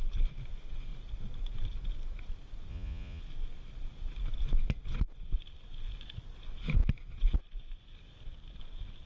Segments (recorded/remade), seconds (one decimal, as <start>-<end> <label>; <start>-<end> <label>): 0.0-2.7 recorded; 2.7-3.2 remade; 3.2-9.1 recorded